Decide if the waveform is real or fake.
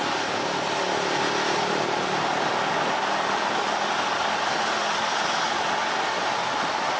real